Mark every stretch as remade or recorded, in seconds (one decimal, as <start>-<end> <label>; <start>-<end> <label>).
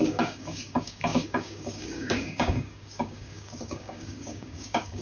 0.0-5.0 remade